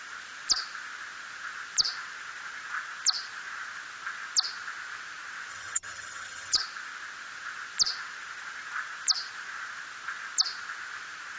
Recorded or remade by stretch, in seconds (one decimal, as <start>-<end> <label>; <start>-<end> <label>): 0.0-5.5 recorded; 5.5-6.6 remade; 6.6-11.4 recorded